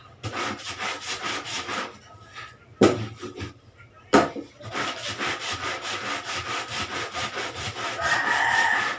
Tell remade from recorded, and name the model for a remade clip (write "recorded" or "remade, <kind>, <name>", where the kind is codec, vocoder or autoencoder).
remade, vocoder, BigVGAN v2